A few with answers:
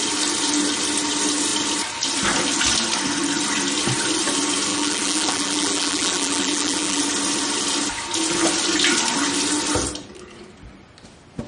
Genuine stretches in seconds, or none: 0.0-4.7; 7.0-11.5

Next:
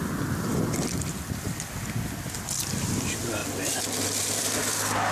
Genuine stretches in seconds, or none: 0.0-5.1

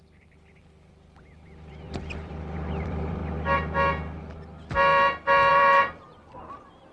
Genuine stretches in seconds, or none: 3.2-5.5

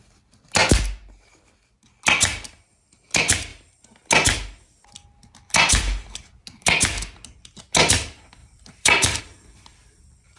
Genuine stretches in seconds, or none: 0.0-8.4; 9.2-10.4

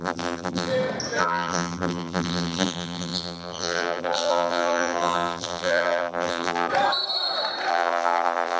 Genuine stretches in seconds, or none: 0.7-1.2; 6.7-7.7

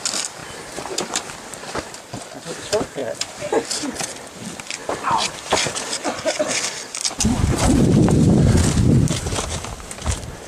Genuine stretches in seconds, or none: 4.8-7.2

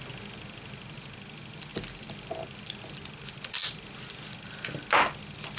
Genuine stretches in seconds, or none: 0.0-5.6

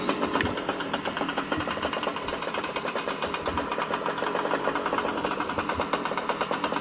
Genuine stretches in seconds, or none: 2.1-2.6; 3.7-5.3